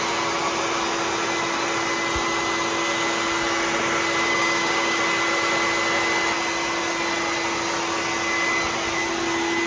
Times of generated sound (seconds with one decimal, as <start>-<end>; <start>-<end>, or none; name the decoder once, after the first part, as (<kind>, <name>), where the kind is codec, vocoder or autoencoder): 4.3-5.0 (codec, DAC)